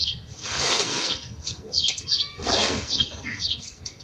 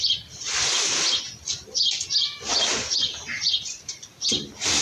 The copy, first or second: first